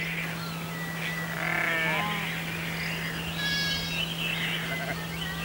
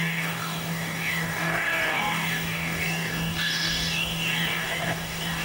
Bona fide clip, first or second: first